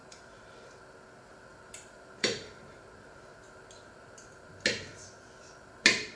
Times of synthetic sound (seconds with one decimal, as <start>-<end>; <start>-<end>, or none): 0.0-0.8; 1.5-2.6